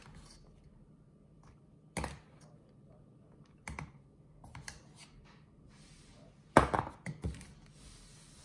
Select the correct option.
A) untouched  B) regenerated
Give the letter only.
A